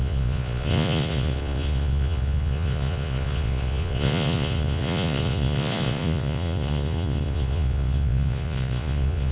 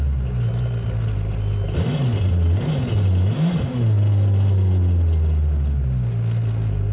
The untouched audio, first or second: second